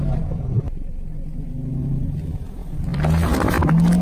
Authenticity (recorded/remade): recorded